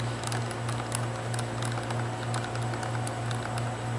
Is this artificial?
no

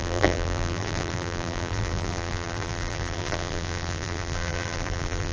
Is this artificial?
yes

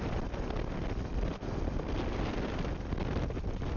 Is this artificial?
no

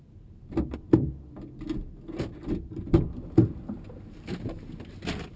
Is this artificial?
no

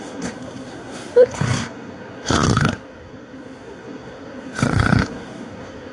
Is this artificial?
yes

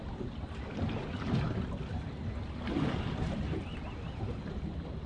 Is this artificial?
no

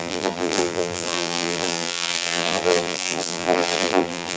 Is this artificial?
yes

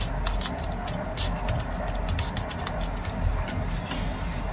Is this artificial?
no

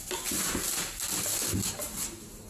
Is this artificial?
no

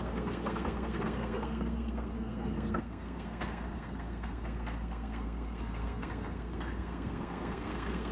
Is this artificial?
yes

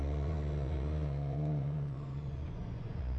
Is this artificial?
yes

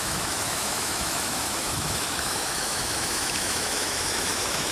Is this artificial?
yes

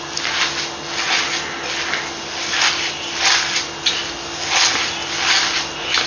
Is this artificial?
no